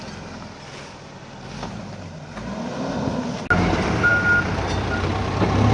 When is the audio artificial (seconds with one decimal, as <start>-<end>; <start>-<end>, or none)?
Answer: none